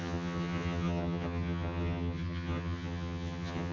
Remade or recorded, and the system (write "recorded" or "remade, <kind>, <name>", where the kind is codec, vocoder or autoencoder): remade, vocoder, HiFi-GAN